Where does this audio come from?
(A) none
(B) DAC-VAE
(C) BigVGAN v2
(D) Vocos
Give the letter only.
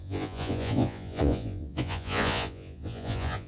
D